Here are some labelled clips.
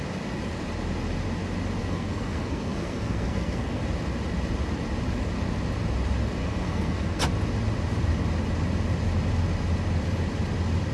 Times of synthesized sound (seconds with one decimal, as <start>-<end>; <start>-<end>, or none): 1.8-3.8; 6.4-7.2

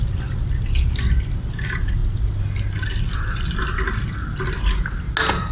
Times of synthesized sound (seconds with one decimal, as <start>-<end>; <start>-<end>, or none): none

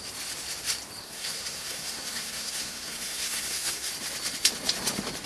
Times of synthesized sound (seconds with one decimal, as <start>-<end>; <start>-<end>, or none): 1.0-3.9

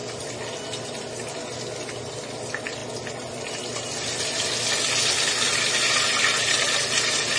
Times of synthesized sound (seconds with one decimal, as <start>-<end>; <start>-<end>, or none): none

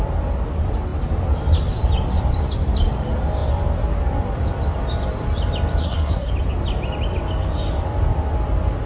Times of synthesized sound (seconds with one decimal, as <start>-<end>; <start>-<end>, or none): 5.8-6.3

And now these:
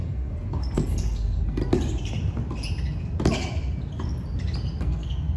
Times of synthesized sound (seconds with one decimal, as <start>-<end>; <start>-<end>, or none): 0.0-1.6; 4.8-5.4